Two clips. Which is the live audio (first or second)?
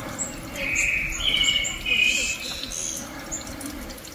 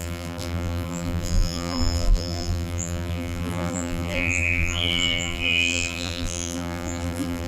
first